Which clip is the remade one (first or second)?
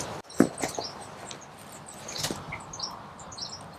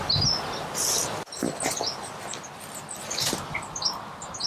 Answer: first